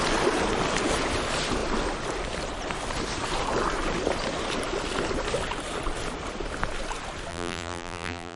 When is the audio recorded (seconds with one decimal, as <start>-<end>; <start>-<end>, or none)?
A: 0.0-7.3